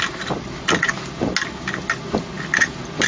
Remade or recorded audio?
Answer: recorded